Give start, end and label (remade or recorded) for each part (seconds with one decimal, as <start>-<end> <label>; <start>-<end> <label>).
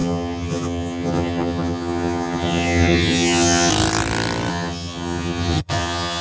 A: 0.0-3.7 remade; 3.7-4.5 recorded; 4.5-6.2 remade